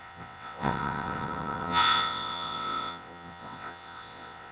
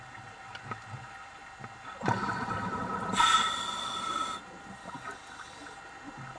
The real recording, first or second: second